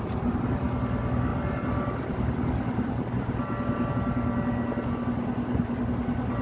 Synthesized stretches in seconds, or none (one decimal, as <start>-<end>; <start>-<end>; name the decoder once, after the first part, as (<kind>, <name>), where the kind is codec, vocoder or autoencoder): none